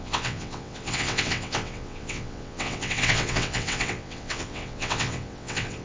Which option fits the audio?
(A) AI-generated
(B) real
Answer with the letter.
A